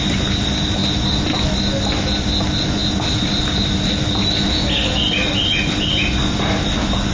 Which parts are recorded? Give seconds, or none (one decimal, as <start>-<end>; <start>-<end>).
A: 0.0-7.1